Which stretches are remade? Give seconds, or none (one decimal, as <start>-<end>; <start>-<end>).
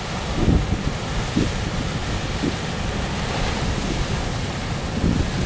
none